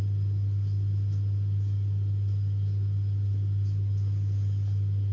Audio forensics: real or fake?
real